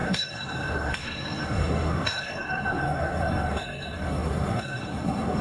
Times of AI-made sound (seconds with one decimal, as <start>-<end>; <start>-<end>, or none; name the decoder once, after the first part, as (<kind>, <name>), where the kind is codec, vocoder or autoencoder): 0.0-5.4 (codec, SNAC)